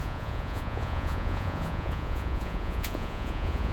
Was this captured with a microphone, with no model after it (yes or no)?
no